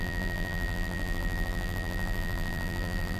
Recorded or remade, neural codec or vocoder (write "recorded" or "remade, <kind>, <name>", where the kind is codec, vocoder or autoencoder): remade, vocoder, BigVGAN v2